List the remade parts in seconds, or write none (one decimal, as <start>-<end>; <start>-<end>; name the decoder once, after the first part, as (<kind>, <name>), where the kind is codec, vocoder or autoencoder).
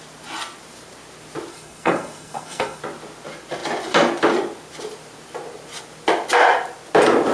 1.5-2.8 (codec, SNAC)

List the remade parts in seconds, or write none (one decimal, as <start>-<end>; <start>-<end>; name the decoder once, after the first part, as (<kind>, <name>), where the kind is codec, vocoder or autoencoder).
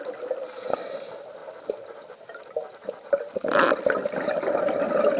none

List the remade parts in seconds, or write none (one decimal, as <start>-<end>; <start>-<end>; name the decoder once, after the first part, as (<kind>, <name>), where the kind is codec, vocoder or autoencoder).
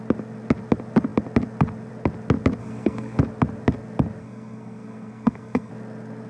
2.6-3.2 (codec, SNAC); 4.2-5.7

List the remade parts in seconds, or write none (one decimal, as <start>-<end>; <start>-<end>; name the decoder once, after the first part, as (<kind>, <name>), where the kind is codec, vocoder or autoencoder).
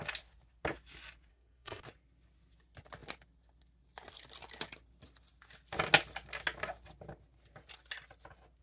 1.3-1.8 (codec, SNAC)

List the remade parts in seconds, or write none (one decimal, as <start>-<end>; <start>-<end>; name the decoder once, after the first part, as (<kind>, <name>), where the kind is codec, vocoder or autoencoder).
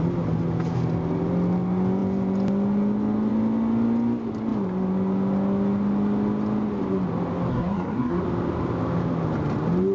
7.5-8.2 (codec, SNAC)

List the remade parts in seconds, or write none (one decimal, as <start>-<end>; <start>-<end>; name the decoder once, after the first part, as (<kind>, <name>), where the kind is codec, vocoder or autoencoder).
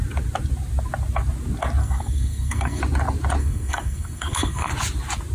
1.8-2.8 (codec, SNAC); 3.4-4.7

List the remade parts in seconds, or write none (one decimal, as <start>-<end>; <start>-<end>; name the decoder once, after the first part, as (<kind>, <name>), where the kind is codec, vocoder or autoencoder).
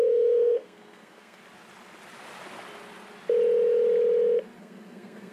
0.0-1.4 (codec, SNAC); 4.6-5.3